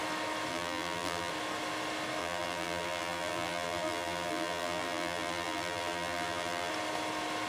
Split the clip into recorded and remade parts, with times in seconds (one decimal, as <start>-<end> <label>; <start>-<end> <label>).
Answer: 0.0-0.5 recorded; 0.5-1.3 remade; 1.3-2.2 recorded; 2.2-6.7 remade; 6.7-7.5 recorded